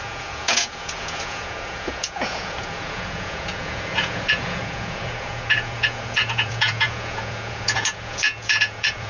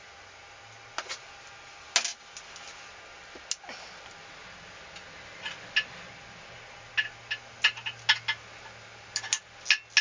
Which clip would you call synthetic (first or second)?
first